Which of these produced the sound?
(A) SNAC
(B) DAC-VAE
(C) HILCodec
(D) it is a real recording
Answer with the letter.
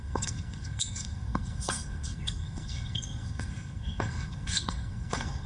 A